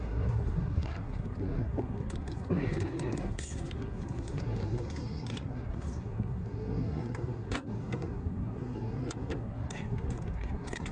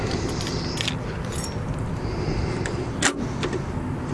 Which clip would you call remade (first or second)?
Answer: first